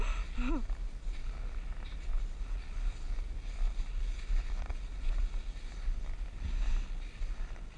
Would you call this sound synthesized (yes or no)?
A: no